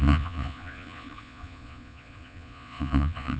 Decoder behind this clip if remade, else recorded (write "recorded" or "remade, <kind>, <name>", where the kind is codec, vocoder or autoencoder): remade, vocoder, Vocos